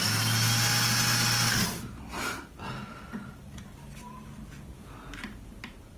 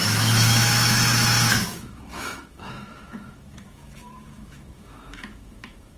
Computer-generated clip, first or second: second